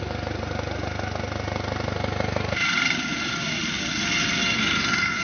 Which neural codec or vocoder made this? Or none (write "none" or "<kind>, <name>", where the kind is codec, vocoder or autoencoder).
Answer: none